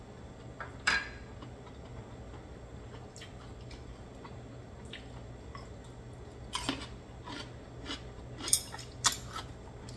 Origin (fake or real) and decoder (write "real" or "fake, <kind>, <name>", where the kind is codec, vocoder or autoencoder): real